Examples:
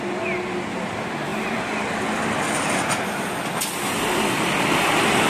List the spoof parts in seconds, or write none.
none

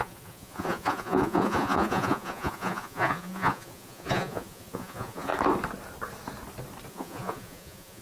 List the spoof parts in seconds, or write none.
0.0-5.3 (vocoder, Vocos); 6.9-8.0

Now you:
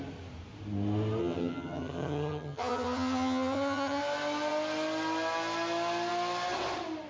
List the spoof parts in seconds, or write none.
1.2-4.0 (vocoder, HiFi-GAN)

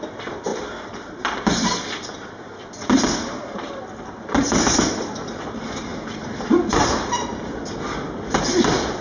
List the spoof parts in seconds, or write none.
0.5-1.2 (vocoder, BigVGAN v2); 5.9-6.4

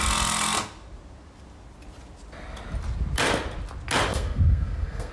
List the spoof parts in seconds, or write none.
4.1-5.1 (codec, SNAC)

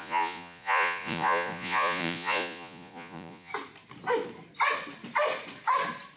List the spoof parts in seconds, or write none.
0.0-3.5 (vocoder, Vocos)